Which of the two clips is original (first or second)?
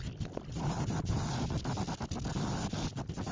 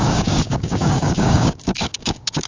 first